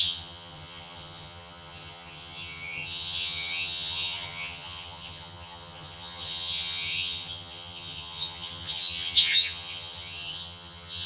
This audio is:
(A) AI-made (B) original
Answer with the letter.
A